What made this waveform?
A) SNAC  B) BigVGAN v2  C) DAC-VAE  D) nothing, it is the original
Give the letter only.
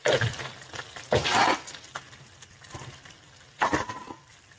B